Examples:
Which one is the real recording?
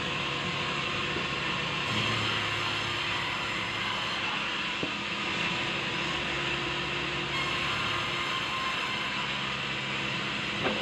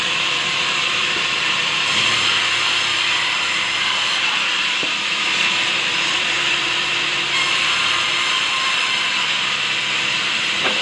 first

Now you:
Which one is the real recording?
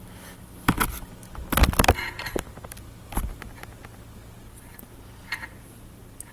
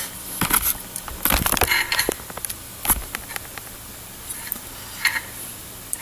first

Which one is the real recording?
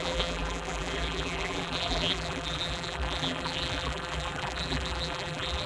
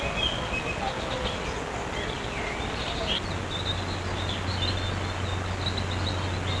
second